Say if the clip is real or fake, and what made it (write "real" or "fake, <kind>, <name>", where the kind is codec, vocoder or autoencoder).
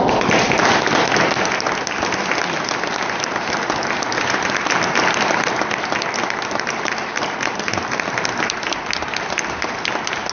real